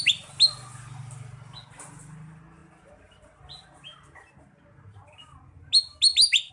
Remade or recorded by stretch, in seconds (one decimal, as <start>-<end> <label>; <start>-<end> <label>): 0.0-6.5 recorded